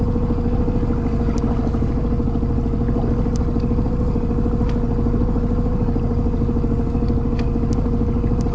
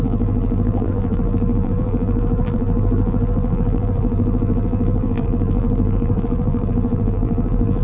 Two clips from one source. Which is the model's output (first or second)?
second